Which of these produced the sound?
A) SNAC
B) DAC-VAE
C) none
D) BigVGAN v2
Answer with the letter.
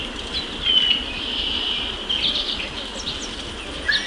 C